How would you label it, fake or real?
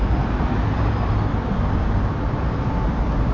real